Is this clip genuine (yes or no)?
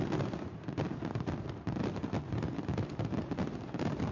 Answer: yes